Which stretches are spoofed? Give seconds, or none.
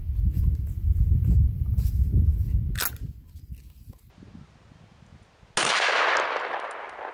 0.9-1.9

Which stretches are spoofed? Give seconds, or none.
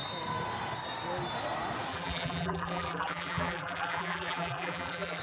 1.9-5.2